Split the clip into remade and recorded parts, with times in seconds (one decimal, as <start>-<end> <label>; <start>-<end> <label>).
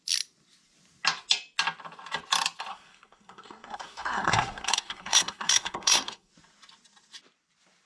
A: 0.0-2.7 recorded; 2.7-6.3 remade; 6.3-7.9 recorded